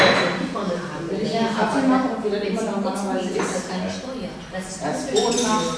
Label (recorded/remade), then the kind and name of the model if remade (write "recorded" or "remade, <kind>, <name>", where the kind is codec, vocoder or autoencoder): recorded